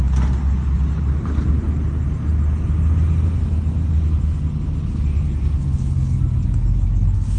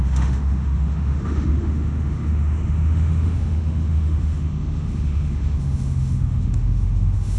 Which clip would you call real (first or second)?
first